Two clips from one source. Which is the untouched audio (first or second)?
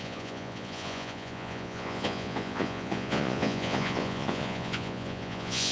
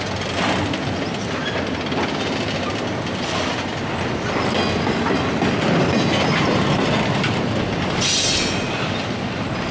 second